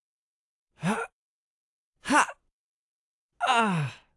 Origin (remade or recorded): recorded